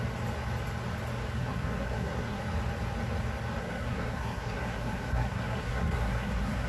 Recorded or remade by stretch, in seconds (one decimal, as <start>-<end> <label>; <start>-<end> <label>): 0.0-1.4 recorded; 1.4-2.4 remade; 2.4-3.6 recorded; 3.6-6.7 remade